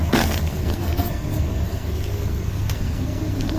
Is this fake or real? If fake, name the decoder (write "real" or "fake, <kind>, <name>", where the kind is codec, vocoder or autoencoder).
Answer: fake, codec, SNAC